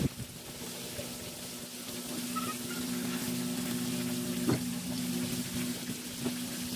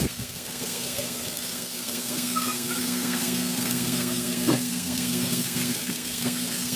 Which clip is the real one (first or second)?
first